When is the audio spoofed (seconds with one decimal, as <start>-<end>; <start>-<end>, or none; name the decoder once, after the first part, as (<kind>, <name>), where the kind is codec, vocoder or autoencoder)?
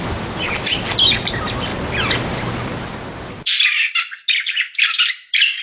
none